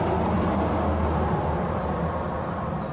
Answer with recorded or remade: recorded